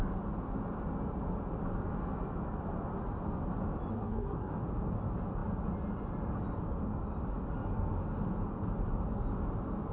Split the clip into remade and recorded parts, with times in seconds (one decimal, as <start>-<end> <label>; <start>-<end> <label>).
0.0-3.9 recorded; 3.9-4.5 remade; 4.5-9.9 recorded